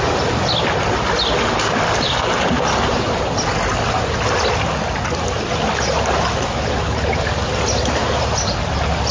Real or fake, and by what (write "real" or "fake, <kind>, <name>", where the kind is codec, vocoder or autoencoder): real